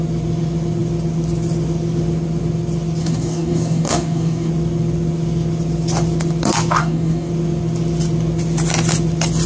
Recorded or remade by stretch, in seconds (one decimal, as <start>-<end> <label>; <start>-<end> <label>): 0.0-3.0 recorded; 3.0-4.5 remade; 4.5-6.8 recorded; 6.8-7.3 remade; 7.3-9.5 recorded